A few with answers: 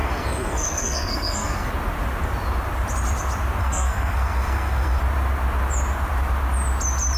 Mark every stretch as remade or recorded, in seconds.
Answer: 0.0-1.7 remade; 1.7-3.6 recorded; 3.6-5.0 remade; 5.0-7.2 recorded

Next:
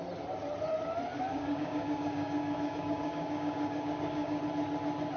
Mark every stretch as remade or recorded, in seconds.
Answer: 0.0-1.3 recorded; 1.3-4.4 remade; 4.4-5.2 recorded

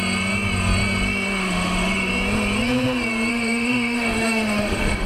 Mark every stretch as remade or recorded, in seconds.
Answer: 0.0-1.4 recorded; 1.4-2.1 remade; 2.1-3.3 recorded; 3.3-5.1 remade

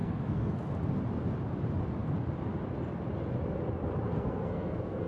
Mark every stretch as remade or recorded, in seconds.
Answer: 0.0-0.6 remade; 0.6-4.1 recorded; 4.1-5.1 remade

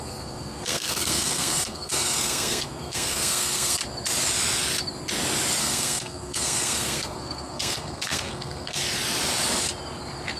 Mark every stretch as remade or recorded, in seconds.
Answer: 0.0-3.8 remade; 3.8-5.6 recorded; 5.6-8.8 remade; 8.8-10.4 recorded

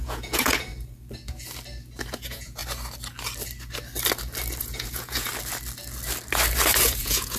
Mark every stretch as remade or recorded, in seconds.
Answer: 0.0-0.7 remade; 0.7-2.1 recorded; 2.1-2.6 remade; 2.6-4.6 recorded; 4.6-5.3 remade; 5.3-6.8 recorded; 6.8-7.4 remade

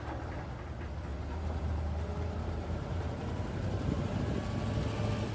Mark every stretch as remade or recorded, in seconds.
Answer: 0.0-1.1 recorded; 1.1-4.2 remade; 4.2-5.3 recorded

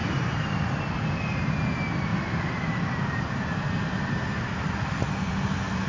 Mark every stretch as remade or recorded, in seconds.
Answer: 0.0-0.9 remade; 0.9-2.1 recorded; 2.1-3.4 remade; 3.4-5.9 recorded